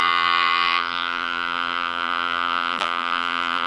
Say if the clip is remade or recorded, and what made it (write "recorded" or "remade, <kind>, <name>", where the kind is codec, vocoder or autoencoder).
remade, vocoder, BigVGAN v2